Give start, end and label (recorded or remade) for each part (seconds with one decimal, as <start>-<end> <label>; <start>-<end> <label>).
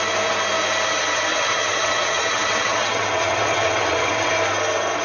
0.0-1.3 recorded; 1.3-4.3 remade; 4.3-5.0 recorded